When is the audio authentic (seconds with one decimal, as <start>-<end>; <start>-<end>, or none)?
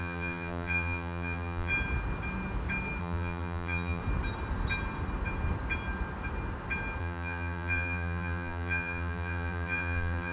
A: 1.7-3.0; 4.0-7.0